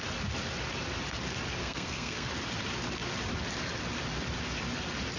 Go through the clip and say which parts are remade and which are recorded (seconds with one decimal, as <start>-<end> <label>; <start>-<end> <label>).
0.0-1.6 recorded; 1.6-2.3 remade; 2.3-5.2 recorded